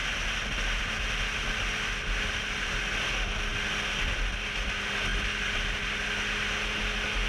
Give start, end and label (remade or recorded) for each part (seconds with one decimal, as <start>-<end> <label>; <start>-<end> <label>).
0.0-7.3 recorded